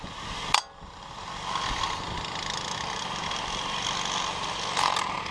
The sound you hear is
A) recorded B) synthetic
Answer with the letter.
A